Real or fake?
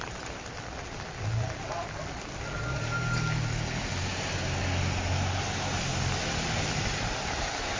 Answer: real